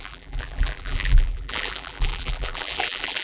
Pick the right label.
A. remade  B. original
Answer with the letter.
A